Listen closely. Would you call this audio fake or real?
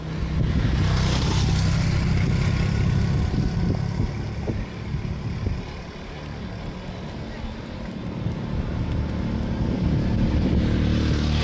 real